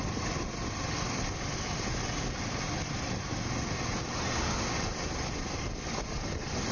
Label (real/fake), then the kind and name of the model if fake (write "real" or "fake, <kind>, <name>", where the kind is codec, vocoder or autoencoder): real